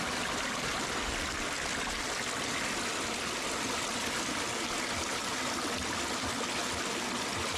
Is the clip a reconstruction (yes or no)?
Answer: no